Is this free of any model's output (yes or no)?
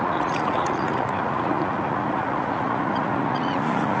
no